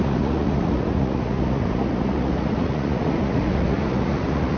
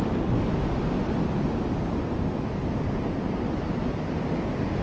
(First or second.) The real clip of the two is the second